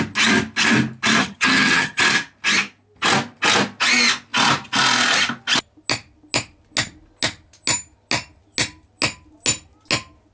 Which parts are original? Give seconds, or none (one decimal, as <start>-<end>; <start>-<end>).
0.0-1.2; 2.0-10.3